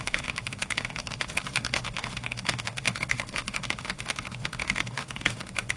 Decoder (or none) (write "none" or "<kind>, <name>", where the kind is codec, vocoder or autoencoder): autoencoder, DAC-VAE